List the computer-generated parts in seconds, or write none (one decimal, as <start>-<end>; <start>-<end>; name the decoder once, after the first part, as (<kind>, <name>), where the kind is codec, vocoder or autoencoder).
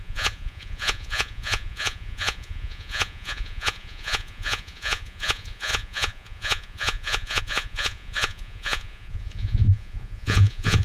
0.0-10.8 (vocoder, Vocos)